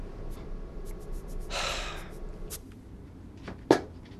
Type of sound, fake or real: real